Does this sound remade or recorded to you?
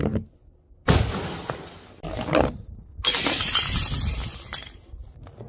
recorded